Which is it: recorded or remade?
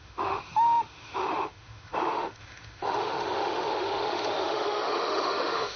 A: remade